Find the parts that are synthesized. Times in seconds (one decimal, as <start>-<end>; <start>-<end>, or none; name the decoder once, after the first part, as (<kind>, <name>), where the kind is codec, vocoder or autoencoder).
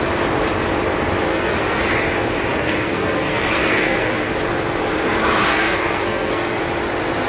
1.3-1.8 (codec, SNAC); 2.5-4.3; 5.5-6.6